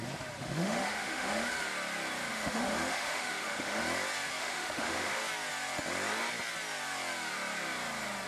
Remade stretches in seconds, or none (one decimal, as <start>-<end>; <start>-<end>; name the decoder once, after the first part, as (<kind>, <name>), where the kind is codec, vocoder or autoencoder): 0.4-1.5 (autoencoder, DAC-VAE); 2.3-3.8; 4.4-5.2